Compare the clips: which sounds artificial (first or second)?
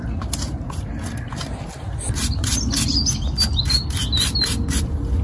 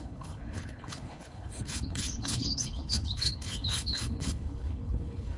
second